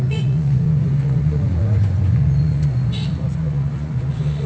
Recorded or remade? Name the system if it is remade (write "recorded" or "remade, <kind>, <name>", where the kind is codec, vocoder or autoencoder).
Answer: remade, vocoder, Vocos